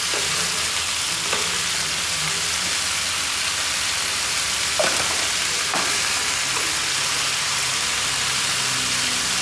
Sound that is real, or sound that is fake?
real